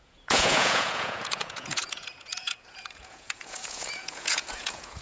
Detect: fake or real fake